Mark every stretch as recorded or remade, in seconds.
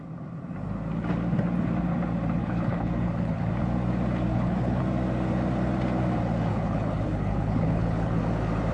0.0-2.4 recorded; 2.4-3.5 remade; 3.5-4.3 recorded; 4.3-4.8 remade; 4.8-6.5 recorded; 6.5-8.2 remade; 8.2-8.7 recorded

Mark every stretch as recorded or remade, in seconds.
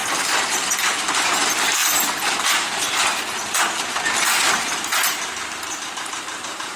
0.0-0.5 recorded; 0.5-1.8 remade; 1.8-4.3 recorded; 4.3-6.8 remade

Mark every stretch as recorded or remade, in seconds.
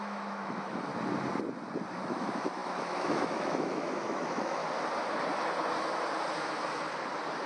0.0-0.9 remade; 0.9-1.9 recorded; 1.9-4.6 remade; 4.6-7.5 recorded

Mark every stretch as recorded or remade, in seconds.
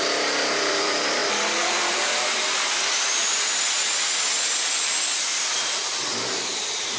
0.0-1.2 remade; 1.2-1.9 recorded; 1.9-3.3 remade; 3.3-6.4 recorded; 6.4-7.0 remade